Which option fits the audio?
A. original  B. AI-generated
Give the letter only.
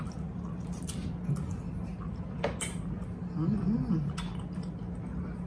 A